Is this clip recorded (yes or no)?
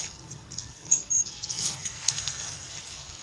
no